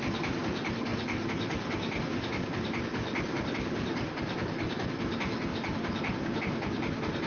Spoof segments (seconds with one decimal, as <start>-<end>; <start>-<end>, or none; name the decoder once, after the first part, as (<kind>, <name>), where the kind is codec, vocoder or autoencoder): none